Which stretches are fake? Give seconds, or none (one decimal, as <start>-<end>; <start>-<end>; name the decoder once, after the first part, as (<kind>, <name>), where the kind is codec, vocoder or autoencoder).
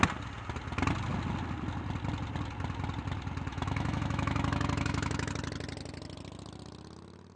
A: 3.5-5.3 (autoencoder, DAC-VAE)